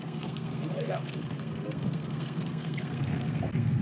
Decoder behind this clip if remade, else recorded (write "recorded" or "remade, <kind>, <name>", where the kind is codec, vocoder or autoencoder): remade, codec, SNAC